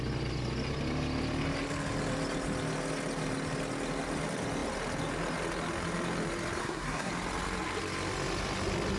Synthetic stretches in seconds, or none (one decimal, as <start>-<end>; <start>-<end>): 6.6-7.1